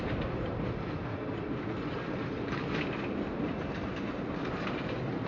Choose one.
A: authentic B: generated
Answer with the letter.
A